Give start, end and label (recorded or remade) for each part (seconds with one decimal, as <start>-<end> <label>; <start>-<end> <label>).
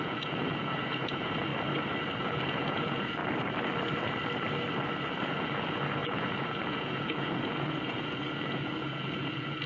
0.0-1.5 remade; 1.5-2.2 recorded; 2.2-3.2 remade; 3.2-5.1 recorded; 5.1-9.7 remade